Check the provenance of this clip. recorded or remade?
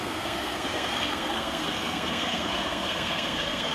remade